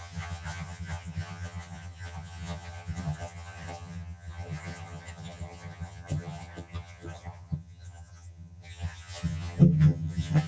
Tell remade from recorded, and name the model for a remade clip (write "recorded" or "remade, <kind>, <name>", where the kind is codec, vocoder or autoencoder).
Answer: remade, vocoder, HiFi-GAN